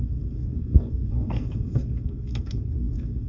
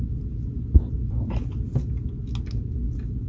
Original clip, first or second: second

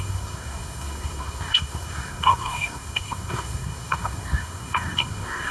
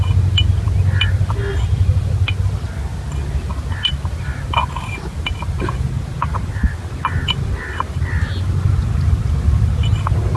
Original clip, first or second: second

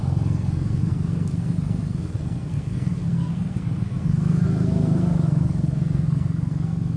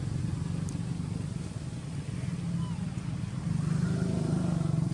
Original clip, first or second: second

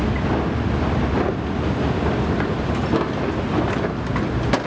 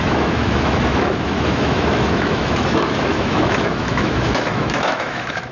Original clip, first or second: first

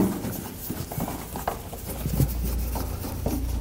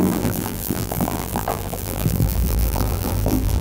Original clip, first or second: first